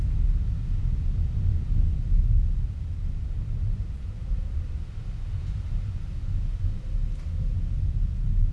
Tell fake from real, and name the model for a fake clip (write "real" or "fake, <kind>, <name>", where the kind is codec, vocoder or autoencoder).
real